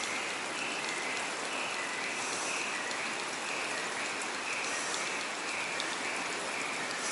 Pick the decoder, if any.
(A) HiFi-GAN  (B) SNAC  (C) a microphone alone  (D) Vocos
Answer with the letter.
C